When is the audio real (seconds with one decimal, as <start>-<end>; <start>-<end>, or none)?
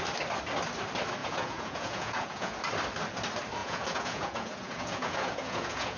0.0-1.2; 2.6-3.6